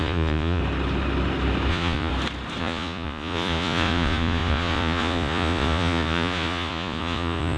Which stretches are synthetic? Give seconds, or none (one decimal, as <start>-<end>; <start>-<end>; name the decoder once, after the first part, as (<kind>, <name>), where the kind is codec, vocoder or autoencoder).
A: 0.0-0.6 (vocoder, Vocos); 1.7-2.1; 2.6-7.6